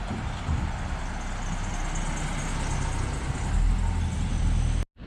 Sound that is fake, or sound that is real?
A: real